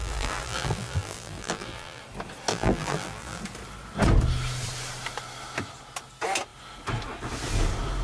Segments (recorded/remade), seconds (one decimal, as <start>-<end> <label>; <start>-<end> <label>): 0.0-2.0 remade; 2.0-2.5 recorded; 2.5-3.4 remade; 3.4-8.0 recorded